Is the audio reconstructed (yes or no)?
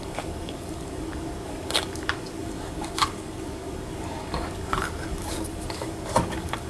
yes